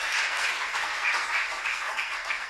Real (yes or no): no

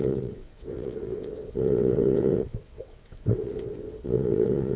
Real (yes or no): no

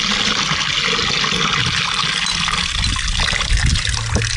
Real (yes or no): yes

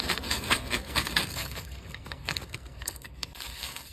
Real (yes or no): no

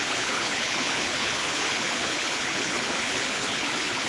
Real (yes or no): no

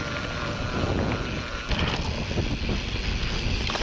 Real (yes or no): yes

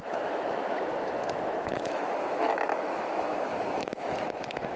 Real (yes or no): no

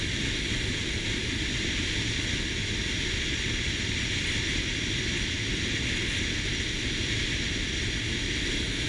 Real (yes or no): yes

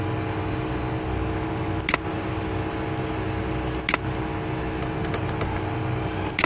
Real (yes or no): yes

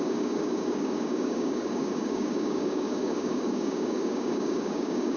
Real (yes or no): no